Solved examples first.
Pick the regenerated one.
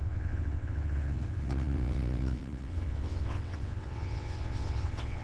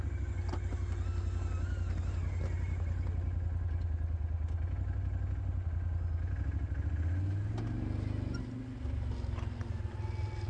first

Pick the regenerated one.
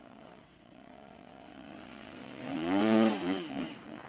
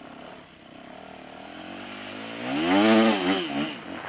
first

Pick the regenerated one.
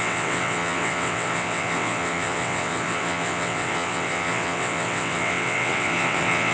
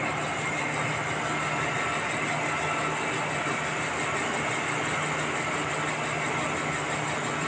first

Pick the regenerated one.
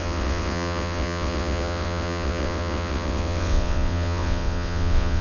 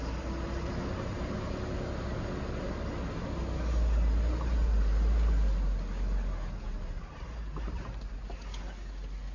first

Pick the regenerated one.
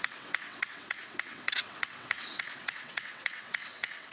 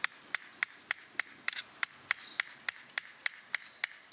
first